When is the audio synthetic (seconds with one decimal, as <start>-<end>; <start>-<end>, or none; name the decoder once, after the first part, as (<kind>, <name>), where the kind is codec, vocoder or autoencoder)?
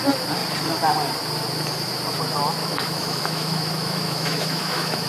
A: 2.6-5.1 (autoencoder, DAC-VAE)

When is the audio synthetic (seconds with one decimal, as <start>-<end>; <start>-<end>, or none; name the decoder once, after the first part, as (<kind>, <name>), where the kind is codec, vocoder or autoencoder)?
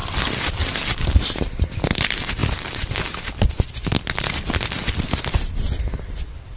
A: none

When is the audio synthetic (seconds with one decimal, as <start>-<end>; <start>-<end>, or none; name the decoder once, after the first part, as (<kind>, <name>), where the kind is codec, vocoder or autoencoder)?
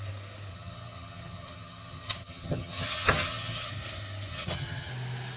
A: 0.5-3.7 (vocoder, HiFi-GAN); 4.3-4.9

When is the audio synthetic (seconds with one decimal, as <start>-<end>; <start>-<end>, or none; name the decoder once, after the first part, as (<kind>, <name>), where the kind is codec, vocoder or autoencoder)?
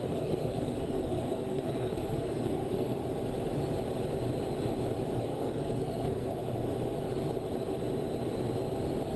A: 0.0-3.0 (codec, SNAC); 5.2-6.3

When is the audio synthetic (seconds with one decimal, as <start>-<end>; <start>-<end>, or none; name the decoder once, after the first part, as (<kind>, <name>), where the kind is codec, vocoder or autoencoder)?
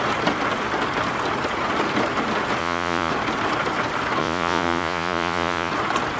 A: 2.6-3.1 (vocoder, Vocos); 4.2-5.7